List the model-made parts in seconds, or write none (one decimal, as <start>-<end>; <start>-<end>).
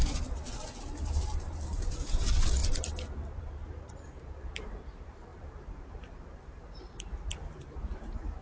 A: 0.8-8.4